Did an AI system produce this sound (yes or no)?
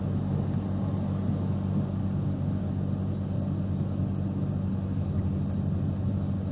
no